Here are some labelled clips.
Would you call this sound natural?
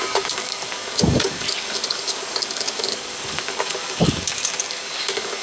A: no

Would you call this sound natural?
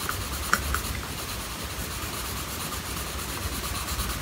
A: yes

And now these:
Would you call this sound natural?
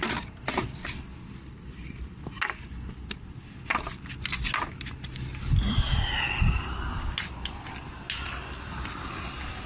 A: yes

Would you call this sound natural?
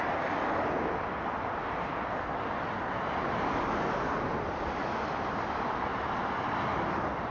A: yes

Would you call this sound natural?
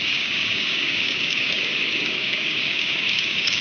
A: no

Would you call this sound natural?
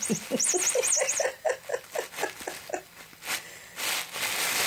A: yes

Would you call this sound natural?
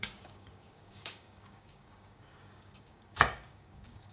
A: no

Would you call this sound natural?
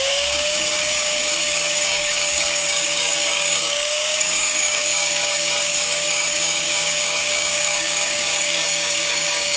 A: no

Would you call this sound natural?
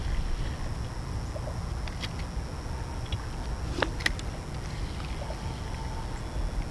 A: yes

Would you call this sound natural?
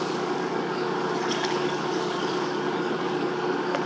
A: no